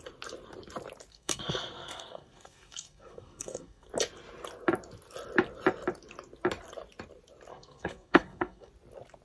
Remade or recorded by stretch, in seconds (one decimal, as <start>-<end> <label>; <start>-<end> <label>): 0.0-1.1 recorded; 1.1-3.9 remade; 3.9-7.5 recorded; 7.5-8.7 remade; 8.7-9.2 recorded

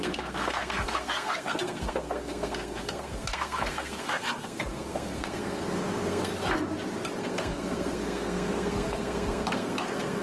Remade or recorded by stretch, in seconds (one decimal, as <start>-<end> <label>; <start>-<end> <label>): 0.0-6.3 remade; 6.3-7.2 recorded; 7.2-10.2 remade

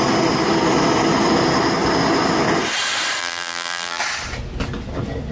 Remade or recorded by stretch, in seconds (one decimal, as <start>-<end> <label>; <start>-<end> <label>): 0.0-3.2 recorded; 3.2-4.0 remade; 4.0-5.3 recorded

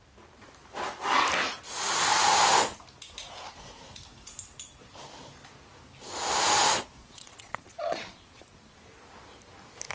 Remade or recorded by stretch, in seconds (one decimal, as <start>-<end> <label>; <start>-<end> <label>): 0.0-7.0 recorded; 7.0-8.4 remade; 8.4-9.9 recorded

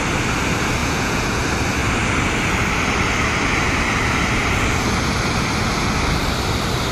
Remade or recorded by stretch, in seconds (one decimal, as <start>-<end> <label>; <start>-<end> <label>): 0.0-0.8 recorded; 0.8-1.4 remade; 1.4-6.9 recorded

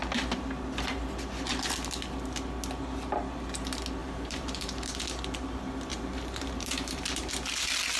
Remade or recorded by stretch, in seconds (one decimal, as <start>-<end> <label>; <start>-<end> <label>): 0.0-4.0 recorded; 4.0-4.6 remade; 4.6-5.9 recorded; 5.9-7.3 remade; 7.3-8.0 recorded

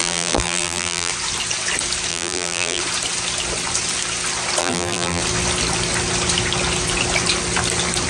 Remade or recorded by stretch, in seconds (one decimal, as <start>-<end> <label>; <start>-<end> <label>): 0.0-1.1 remade; 1.1-2.1 recorded; 2.1-2.8 remade; 2.8-4.6 recorded; 4.6-5.2 remade; 5.2-8.1 recorded

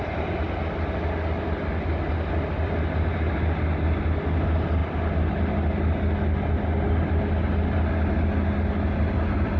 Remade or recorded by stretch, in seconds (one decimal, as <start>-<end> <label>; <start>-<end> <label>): 0.0-9.6 recorded